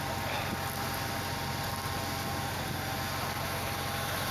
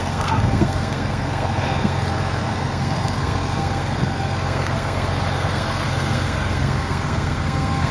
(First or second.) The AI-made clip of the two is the second